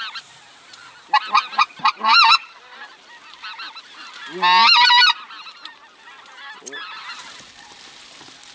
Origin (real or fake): real